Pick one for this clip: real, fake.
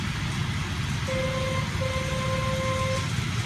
real